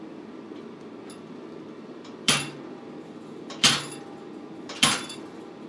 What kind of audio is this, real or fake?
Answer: fake